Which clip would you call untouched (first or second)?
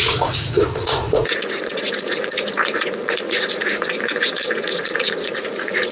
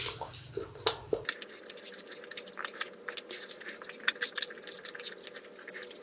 second